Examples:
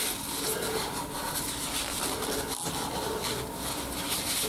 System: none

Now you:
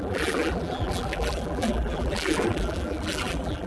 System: vocoder, BigVGAN v2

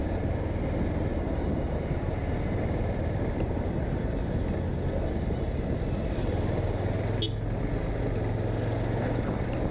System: none